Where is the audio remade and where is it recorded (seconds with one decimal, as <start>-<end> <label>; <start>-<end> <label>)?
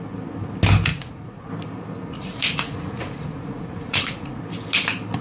0.0-0.9 recorded; 0.9-1.5 remade; 1.5-2.1 recorded; 2.1-4.4 remade; 4.4-5.2 recorded